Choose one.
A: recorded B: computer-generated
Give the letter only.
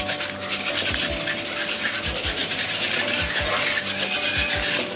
A